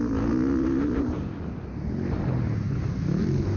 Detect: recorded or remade recorded